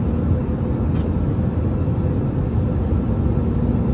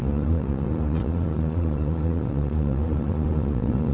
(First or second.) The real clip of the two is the first